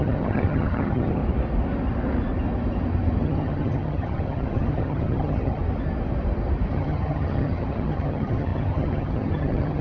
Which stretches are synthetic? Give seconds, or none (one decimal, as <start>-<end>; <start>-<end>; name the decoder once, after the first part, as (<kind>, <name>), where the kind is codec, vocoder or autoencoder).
0.0-1.2 (vocoder, HiFi-GAN); 3.2-5.6; 6.7-9.8